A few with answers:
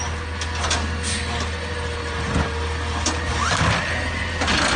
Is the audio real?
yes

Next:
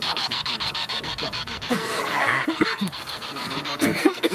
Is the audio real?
no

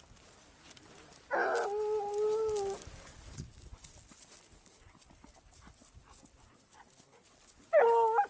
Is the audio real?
yes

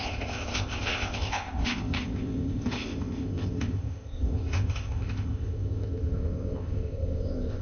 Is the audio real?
no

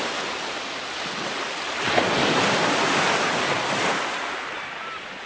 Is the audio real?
yes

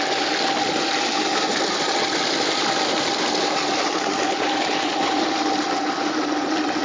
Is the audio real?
yes